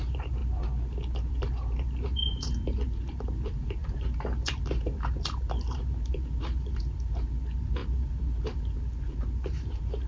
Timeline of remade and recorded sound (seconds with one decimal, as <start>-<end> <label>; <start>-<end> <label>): 0.0-0.4 remade; 0.4-1.3 recorded; 1.3-10.1 remade